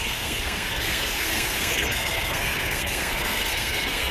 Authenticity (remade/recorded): remade